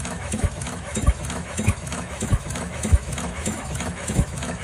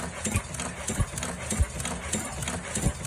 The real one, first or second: second